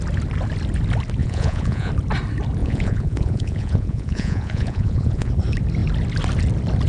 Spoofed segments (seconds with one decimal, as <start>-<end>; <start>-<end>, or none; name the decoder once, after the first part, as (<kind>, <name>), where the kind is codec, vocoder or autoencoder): 1.2-1.9 (vocoder, Vocos); 2.6-5.3